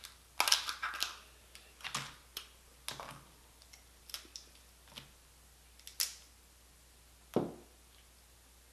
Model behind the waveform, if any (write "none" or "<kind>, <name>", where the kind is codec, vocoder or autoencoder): none